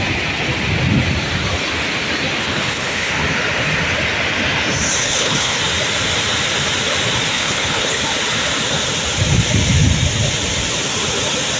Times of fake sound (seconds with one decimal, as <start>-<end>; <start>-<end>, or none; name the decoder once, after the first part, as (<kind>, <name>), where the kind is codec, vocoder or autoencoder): 2.4-3.1 (codec, HILCodec); 5.0-5.6; 7.3-8.0